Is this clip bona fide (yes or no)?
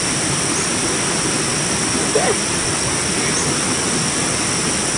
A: yes